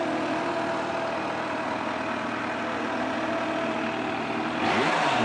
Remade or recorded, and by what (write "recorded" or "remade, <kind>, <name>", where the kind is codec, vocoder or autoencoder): recorded